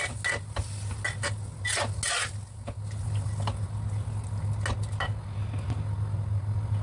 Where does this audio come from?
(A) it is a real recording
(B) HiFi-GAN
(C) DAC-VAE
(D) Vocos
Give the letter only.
A